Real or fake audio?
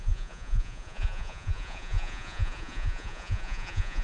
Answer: fake